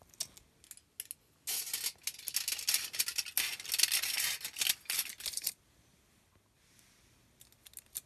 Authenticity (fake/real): real